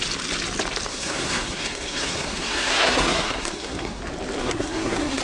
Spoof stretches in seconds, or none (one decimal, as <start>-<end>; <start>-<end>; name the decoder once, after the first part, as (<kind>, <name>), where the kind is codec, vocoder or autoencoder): 0.9-4.0 (codec, SNAC); 4.4-5.2